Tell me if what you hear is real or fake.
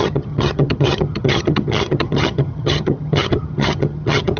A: fake